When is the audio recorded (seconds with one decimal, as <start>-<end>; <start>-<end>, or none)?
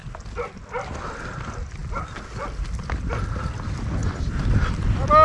0.0-5.2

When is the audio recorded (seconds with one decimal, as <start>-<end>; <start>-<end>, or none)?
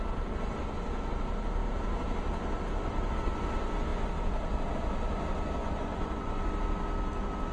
0.0-5.6; 6.4-7.5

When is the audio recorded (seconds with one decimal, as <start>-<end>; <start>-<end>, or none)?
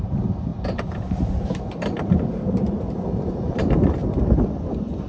0.0-5.1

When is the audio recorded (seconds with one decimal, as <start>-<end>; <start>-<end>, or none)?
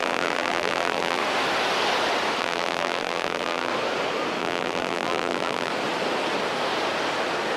1.2-2.4; 3.7-4.4; 5.7-7.6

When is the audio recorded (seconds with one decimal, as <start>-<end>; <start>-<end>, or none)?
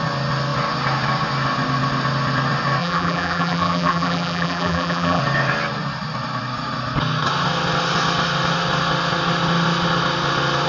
0.0-2.8; 5.2-10.7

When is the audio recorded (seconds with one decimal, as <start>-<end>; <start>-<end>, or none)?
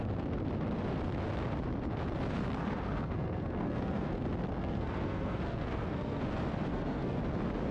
0.0-2.6; 4.1-4.6; 6.2-6.7; 7.2-7.7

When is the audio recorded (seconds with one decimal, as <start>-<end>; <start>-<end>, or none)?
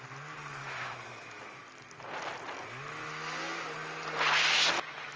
0.0-0.6; 1.4-5.2